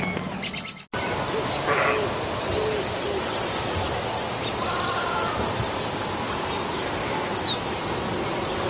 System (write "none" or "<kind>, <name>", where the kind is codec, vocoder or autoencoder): none